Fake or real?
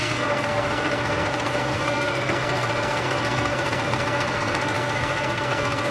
fake